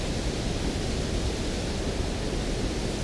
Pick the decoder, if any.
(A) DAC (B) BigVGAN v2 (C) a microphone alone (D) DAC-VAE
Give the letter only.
C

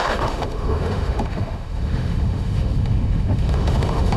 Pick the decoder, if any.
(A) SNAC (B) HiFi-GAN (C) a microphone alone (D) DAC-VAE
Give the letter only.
D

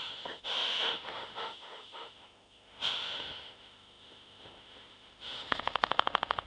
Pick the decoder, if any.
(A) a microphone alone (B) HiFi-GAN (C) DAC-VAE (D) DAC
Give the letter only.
C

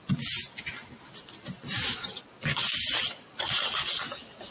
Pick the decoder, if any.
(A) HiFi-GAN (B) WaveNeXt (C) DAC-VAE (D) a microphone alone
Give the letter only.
D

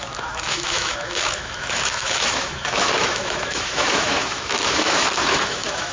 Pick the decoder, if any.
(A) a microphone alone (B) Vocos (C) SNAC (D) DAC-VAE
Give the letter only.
D